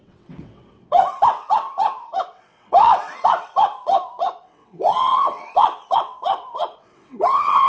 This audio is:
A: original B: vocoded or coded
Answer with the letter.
B